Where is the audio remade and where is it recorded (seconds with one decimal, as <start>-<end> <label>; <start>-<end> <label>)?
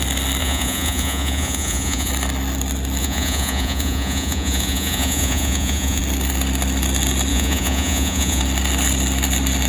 0.0-0.4 recorded; 0.4-2.1 remade; 2.1-3.0 recorded; 3.0-6.0 remade; 6.0-7.3 recorded; 7.3-8.4 remade; 8.4-9.7 recorded